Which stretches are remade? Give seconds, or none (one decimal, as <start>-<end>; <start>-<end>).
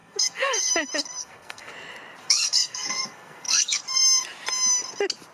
0.0-0.7; 1.2-1.7; 2.2-3.8